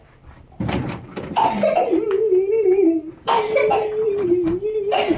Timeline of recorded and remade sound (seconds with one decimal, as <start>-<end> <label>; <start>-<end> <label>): 0.0-5.2 remade